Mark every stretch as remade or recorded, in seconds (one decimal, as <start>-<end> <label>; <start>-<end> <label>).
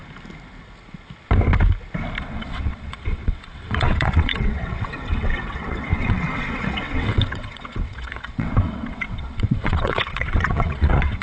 0.0-2.2 recorded; 2.2-11.2 remade